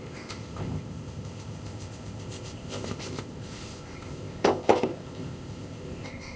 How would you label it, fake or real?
fake